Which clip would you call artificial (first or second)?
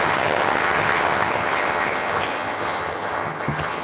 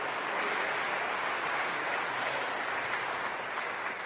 first